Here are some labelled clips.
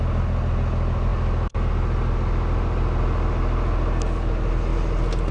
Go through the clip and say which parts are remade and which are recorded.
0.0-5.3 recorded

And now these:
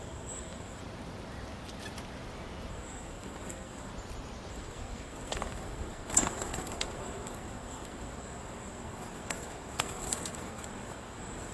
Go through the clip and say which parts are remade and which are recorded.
0.0-0.8 remade; 0.8-2.7 recorded; 2.7-3.9 remade; 3.9-4.5 recorded; 4.5-11.5 remade

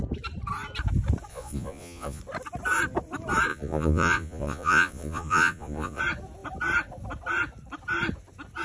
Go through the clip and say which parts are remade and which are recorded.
0.0-1.3 recorded; 1.3-2.2 remade; 2.2-3.5 recorded; 3.5-6.0 remade; 6.0-8.6 recorded

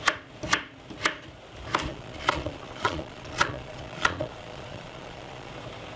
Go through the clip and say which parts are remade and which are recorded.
0.0-1.9 recorded; 1.9-5.5 remade; 5.5-6.0 recorded

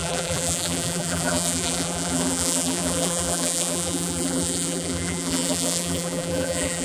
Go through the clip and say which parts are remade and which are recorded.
0.0-6.8 remade

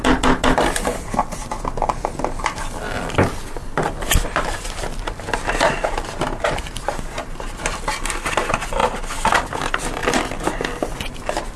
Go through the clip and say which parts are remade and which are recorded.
0.0-11.6 recorded

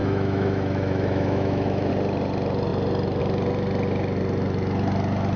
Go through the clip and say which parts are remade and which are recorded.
0.0-1.9 remade; 1.9-5.4 recorded

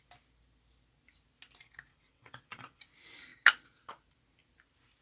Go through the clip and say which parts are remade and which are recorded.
0.0-1.9 recorded; 1.9-2.8 remade; 2.8-5.0 recorded